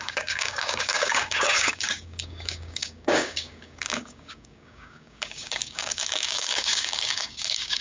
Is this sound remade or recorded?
remade